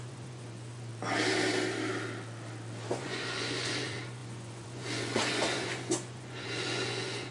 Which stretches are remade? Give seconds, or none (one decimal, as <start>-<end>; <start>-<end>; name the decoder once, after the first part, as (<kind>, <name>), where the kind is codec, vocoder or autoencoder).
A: 0.0-0.9 (vocoder, Vocos); 2.9-7.3